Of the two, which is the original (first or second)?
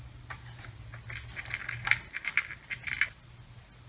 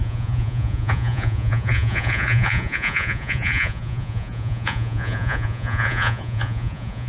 first